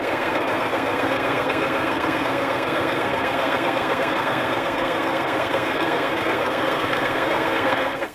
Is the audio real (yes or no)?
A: no